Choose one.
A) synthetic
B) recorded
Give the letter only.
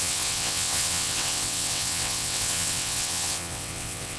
A